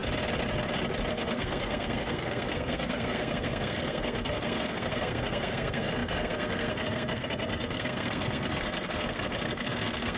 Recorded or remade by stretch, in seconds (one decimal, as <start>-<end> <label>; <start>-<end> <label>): 0.0-1.1 recorded; 1.1-10.2 remade